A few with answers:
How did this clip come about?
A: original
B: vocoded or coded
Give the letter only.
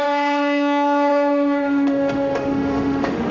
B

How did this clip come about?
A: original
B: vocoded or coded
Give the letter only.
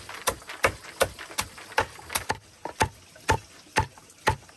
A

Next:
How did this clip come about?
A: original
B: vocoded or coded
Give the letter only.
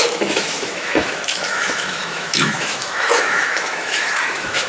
B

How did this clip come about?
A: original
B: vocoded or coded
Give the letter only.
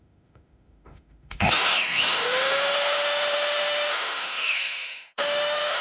B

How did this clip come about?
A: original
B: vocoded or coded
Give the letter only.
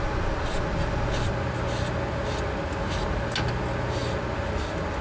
A